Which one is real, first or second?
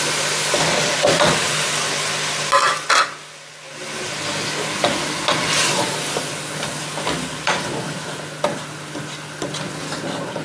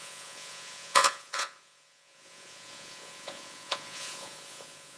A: first